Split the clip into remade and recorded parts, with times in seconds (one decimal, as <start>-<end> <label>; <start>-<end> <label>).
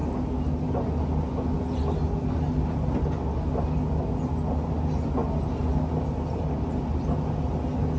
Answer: 0.0-8.0 recorded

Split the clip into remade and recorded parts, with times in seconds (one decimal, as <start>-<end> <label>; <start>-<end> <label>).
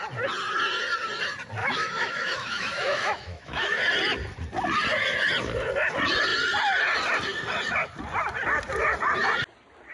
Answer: 0.0-1.6 recorded; 1.6-3.8 remade; 3.8-9.9 recorded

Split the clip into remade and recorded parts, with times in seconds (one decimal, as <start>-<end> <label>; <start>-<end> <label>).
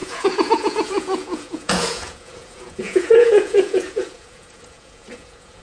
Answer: 0.0-5.6 remade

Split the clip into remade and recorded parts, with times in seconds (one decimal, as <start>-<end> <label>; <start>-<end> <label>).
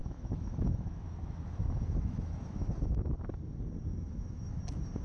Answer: 0.0-3.0 remade; 3.0-3.9 recorded; 3.9-4.6 remade; 4.6-5.0 recorded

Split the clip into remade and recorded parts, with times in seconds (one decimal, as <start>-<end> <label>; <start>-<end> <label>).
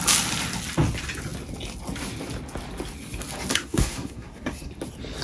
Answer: 0.0-3.5 recorded; 3.5-4.7 remade; 4.7-5.2 recorded